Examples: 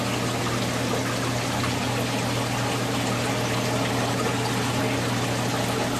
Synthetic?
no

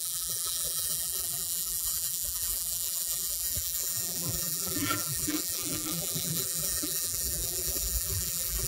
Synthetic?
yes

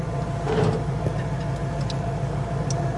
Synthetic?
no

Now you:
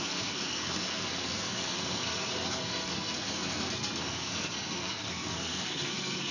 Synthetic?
yes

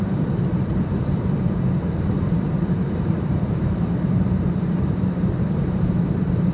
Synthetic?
yes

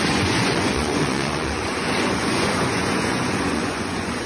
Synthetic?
yes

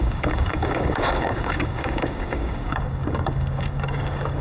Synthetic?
yes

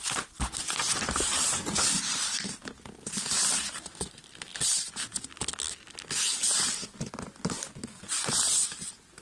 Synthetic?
no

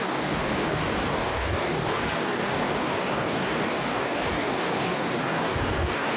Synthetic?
yes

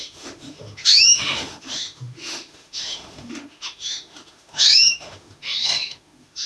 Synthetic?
yes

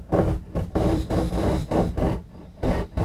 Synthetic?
yes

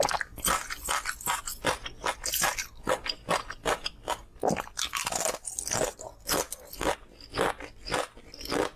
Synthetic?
no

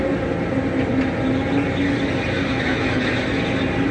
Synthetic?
no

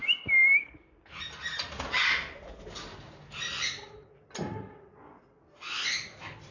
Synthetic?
no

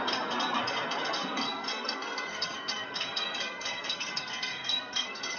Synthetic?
yes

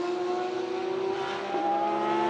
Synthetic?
no